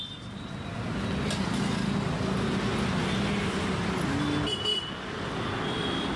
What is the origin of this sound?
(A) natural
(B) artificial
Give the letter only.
A